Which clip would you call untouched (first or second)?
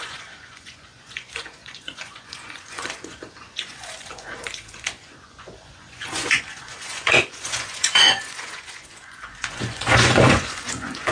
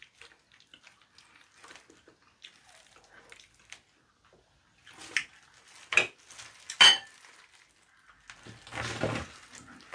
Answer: second